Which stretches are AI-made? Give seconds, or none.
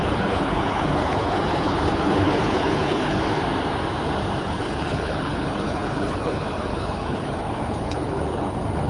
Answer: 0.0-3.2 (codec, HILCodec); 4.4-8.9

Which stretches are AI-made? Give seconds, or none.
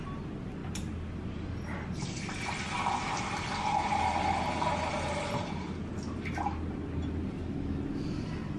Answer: none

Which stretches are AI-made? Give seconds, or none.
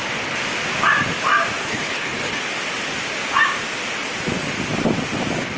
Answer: 1.6-2.4 (codec, HILCodec)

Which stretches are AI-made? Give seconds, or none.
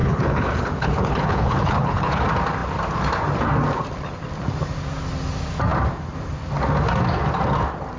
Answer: 0.0-2.2 (codec, HILCodec)